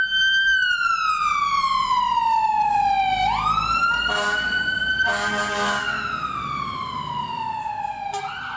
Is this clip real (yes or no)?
yes